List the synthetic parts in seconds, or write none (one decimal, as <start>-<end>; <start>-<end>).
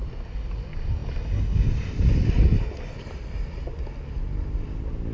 none